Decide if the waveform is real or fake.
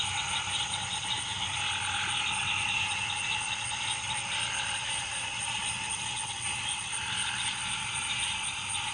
real